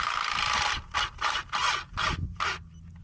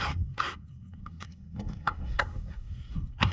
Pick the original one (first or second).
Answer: first